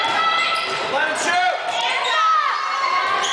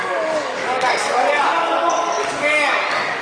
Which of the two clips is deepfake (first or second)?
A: second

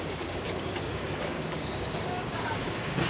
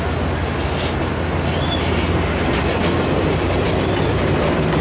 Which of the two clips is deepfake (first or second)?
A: first